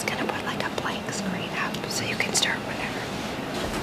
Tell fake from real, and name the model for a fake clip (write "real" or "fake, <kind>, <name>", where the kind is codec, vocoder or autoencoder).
real